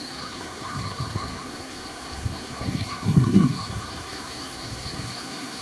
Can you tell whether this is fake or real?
fake